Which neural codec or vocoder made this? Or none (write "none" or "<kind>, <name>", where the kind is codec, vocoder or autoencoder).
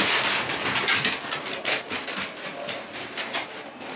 none